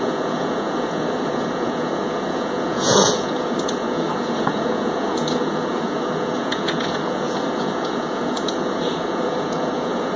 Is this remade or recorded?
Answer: remade